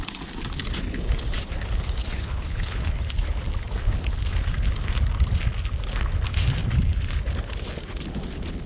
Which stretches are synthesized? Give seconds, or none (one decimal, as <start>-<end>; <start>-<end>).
2.0-2.9